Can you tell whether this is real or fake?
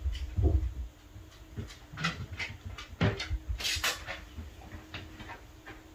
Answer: real